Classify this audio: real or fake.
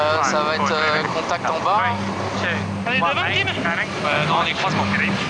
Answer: real